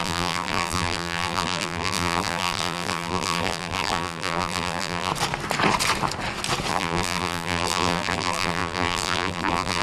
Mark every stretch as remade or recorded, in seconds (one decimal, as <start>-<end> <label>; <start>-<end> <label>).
0.0-5.1 remade; 5.1-6.7 recorded; 6.7-9.8 remade